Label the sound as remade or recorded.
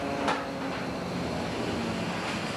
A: recorded